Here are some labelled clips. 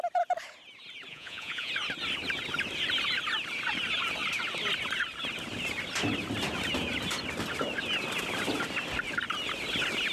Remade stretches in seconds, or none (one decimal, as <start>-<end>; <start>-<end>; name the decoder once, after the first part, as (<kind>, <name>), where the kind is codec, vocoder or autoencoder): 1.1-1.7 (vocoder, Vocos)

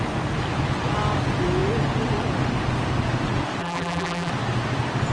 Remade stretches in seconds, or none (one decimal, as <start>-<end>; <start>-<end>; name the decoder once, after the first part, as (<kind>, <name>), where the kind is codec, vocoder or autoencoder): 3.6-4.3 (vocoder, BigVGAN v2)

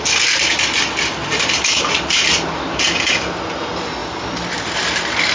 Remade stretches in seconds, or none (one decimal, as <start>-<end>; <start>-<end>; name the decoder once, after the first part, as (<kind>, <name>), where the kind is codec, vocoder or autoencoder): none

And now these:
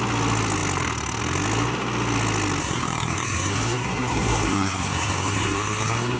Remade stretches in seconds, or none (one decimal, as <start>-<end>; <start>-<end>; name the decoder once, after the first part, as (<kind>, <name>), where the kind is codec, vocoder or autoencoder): 2.6-6.2 (codec, SNAC)

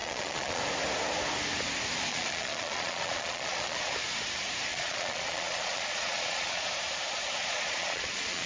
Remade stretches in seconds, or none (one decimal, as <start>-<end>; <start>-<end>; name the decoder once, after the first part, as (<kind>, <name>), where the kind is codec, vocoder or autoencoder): 0.0-0.6 (vocoder, Vocos); 2.1-3.9; 4.7-6.7; 7.4-8.5